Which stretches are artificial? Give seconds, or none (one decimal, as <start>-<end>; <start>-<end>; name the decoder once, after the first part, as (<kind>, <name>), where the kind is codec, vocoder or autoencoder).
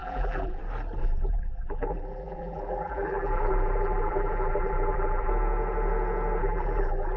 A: 0.0-0.6 (vocoder, BigVGAN v2); 1.0-5.3; 6.4-7.2